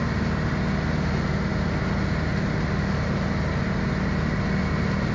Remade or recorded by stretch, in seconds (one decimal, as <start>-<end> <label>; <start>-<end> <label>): 0.0-5.1 recorded